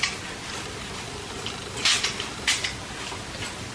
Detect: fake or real real